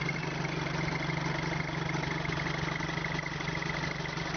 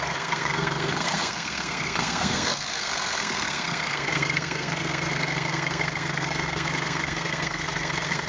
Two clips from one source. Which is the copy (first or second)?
second